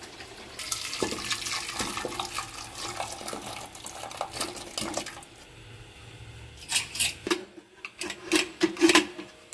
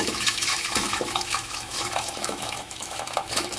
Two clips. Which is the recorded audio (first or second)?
first